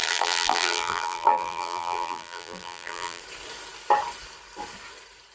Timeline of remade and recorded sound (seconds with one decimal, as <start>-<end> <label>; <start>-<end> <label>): 0.0-3.2 remade; 3.2-5.3 recorded

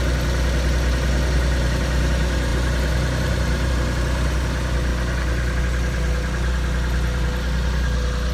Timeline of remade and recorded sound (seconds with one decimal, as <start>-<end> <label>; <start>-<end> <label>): 0.0-8.3 recorded

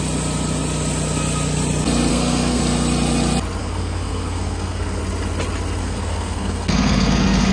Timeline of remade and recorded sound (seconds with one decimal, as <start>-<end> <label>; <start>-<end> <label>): 0.0-2.1 recorded; 2.1-2.6 remade; 2.6-3.6 recorded; 3.6-5.0 remade; 5.0-5.8 recorded; 5.8-7.5 remade

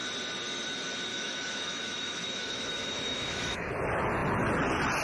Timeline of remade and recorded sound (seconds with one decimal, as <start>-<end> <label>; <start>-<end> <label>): 0.0-1.1 recorded; 1.1-3.7 remade; 3.7-5.0 recorded

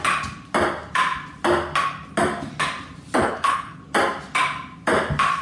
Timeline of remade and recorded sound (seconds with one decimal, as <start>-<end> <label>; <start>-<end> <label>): 0.0-3.2 recorded; 3.2-3.8 remade; 3.8-5.4 recorded

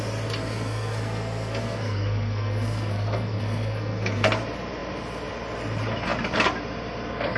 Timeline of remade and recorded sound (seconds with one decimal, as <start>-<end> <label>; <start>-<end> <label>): 0.0-0.4 recorded; 0.4-4.3 remade; 4.3-7.4 recorded

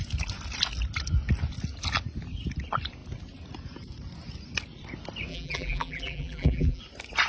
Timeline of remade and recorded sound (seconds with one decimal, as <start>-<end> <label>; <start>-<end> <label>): 0.0-5.3 recorded; 5.3-6.8 remade; 6.8-7.3 recorded

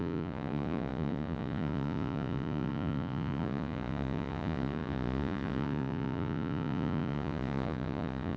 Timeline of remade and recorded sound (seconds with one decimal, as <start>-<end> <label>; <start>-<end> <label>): 0.0-8.4 remade